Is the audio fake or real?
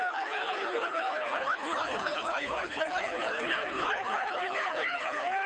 fake